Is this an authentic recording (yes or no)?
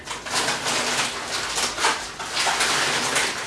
yes